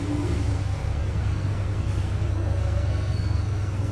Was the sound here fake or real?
fake